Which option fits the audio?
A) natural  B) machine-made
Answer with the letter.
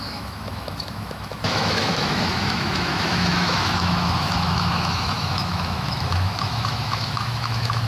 B